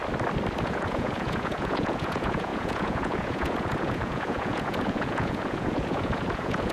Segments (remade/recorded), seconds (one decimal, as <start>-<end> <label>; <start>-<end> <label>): 0.0-0.6 recorded; 0.6-6.7 remade